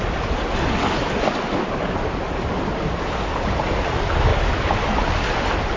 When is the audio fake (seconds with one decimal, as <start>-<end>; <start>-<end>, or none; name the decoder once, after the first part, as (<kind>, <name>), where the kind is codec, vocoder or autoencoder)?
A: none